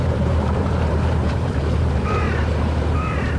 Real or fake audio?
fake